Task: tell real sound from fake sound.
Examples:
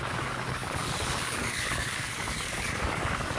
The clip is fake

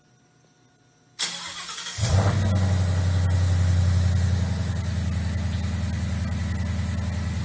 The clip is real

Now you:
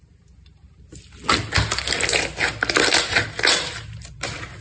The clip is real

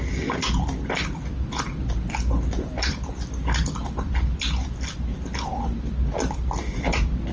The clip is real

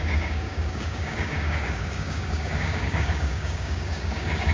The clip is fake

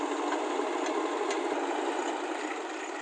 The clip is real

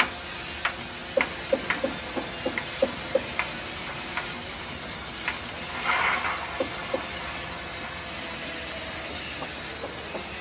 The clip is real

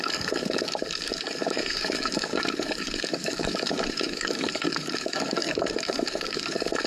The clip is fake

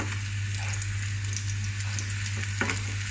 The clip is real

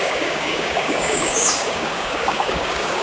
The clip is fake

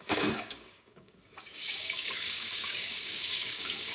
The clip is fake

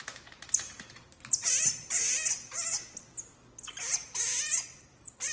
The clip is real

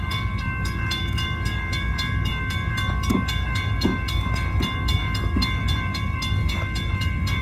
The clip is fake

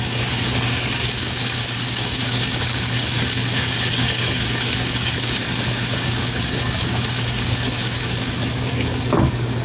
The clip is fake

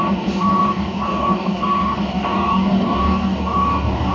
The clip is fake